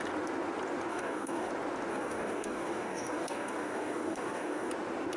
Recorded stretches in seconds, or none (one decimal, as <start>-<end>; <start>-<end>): 0.0-0.9; 1.5-1.9; 4.7-5.2